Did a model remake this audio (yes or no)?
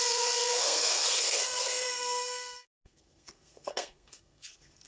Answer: yes